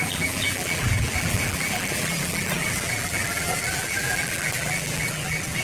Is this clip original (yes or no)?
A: no